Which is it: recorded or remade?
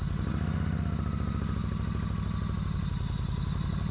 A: recorded